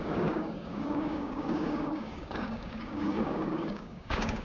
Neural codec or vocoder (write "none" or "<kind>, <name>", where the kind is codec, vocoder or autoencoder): codec, DAC